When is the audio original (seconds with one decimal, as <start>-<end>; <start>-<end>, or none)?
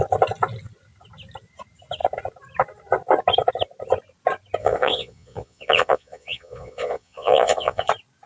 0.0-4.6; 7.9-8.3